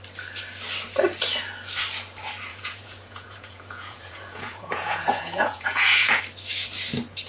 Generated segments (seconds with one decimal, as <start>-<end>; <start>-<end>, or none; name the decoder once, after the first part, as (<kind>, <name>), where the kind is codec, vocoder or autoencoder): 2.5-6.2 (vocoder, Vocos)